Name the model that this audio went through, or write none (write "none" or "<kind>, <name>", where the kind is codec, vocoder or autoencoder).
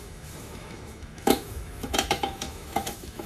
autoencoder, DAC-VAE